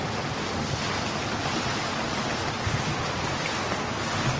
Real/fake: real